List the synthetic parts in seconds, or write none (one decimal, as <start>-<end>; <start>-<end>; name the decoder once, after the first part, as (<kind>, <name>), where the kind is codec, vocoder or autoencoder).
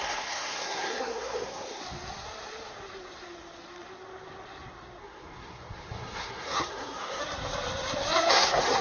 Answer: 0.0-1.8 (codec, SNAC); 5.0-7.2; 8.3-8.8